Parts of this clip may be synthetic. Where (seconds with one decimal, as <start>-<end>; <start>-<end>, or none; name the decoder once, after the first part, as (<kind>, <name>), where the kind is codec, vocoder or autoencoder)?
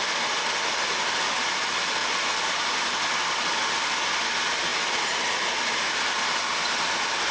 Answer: none